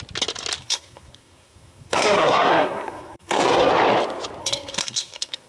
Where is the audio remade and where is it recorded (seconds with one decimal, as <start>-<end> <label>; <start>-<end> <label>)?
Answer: 0.0-0.6 recorded; 0.6-3.7 remade; 3.7-4.4 recorded; 4.4-5.5 remade